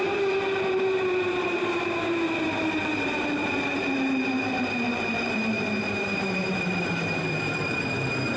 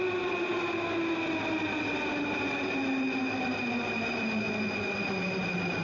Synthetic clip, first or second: first